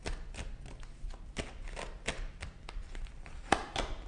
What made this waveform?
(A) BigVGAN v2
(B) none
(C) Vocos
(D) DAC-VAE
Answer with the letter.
B